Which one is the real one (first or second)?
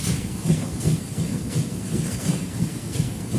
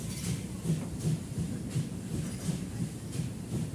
second